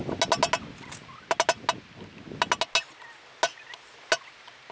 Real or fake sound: real